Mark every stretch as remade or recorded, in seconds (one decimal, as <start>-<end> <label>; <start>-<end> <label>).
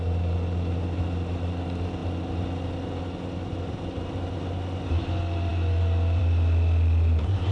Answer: 0.0-7.5 recorded